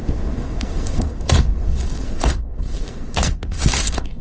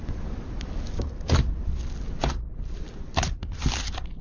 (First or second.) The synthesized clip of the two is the first